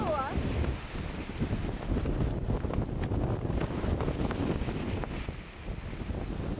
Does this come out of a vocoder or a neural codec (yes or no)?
no